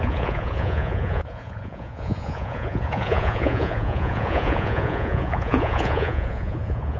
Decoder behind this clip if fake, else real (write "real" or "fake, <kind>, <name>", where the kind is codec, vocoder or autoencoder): fake, vocoder, Vocos